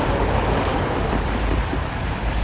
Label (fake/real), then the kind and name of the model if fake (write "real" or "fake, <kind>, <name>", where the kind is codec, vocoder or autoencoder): fake, codec, DAC